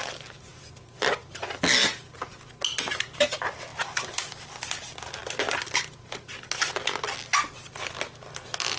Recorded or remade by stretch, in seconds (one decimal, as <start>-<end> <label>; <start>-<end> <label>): 0.0-0.5 recorded; 0.5-1.1 remade; 1.1-3.7 recorded; 3.7-4.5 remade; 4.5-8.8 recorded